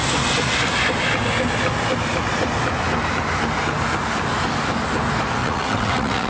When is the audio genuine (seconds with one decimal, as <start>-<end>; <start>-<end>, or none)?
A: 0.0-5.4